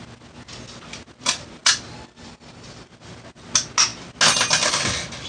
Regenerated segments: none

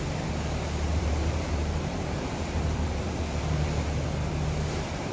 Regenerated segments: 0.9-4.0 (vocoder, BigVGAN v2)